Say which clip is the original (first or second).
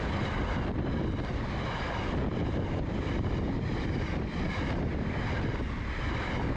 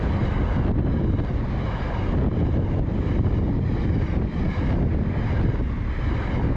second